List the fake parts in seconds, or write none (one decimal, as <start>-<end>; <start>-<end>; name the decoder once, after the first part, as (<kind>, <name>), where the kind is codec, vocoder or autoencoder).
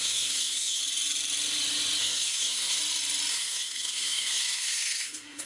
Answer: 0.0-0.8 (codec, SNAC); 2.0-2.8; 3.3-5.5